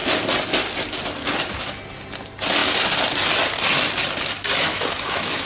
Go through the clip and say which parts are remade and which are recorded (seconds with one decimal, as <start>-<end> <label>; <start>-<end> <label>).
0.0-4.7 recorded; 4.7-5.5 remade